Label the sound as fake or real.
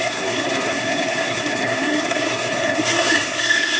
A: fake